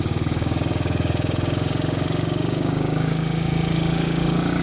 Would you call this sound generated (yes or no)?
yes